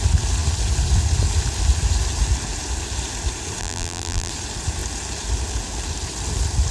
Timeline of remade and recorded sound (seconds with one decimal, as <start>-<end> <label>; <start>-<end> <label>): 0.0-3.6 recorded; 3.6-4.3 remade; 4.3-6.7 recorded